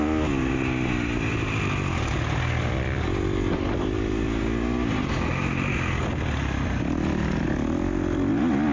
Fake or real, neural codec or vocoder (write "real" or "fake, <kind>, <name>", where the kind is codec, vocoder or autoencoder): real